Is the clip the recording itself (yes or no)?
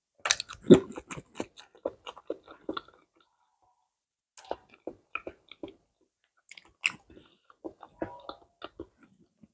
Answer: yes